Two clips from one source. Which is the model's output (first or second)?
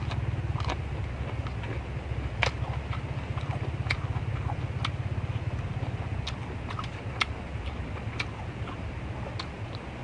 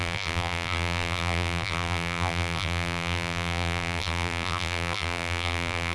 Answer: second